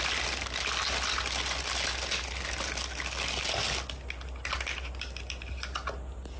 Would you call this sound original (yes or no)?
yes